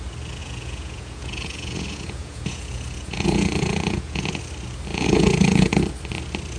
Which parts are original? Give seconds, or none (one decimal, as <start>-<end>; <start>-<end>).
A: 0.0-0.4; 4.4-4.9; 5.8-6.6